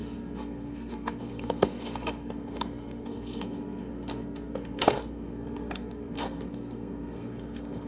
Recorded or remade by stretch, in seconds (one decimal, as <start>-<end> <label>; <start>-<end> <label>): 0.0-7.9 remade